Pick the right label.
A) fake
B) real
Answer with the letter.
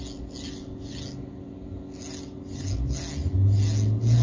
B